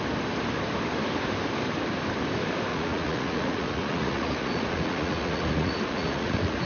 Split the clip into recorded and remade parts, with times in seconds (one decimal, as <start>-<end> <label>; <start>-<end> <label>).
0.0-2.7 recorded; 2.7-6.7 remade